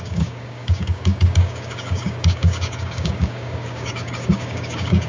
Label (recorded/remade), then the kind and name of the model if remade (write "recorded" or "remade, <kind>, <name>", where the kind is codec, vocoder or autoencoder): remade, codec, DAC